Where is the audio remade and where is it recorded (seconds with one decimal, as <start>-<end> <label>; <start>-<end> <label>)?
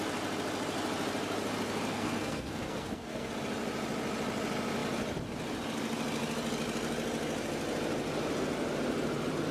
0.0-1.9 recorded; 1.9-3.3 remade; 3.3-9.5 recorded